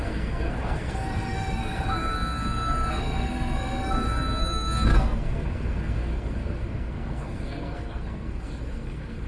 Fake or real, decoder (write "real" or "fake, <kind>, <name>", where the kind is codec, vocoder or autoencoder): fake, codec, SNAC